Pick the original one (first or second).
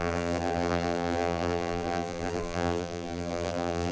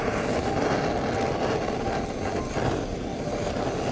second